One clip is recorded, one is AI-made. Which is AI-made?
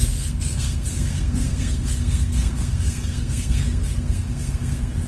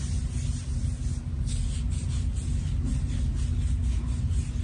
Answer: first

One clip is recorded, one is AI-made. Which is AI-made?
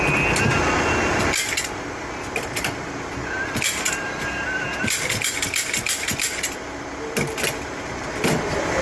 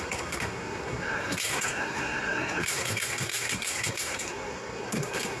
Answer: second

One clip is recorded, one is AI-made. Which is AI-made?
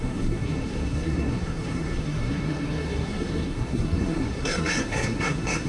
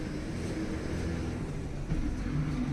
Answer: first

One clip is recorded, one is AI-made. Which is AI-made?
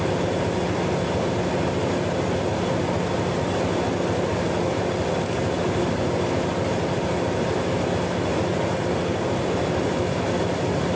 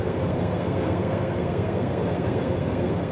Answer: second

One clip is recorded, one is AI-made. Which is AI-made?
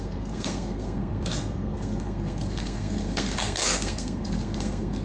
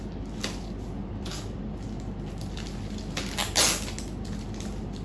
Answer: first